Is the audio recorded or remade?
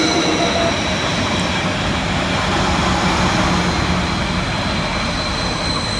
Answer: recorded